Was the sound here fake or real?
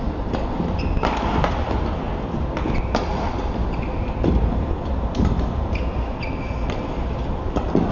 real